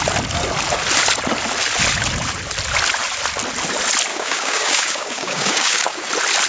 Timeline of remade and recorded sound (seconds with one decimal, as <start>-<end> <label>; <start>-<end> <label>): 0.0-4.1 recorded; 4.1-6.1 remade; 6.1-6.5 recorded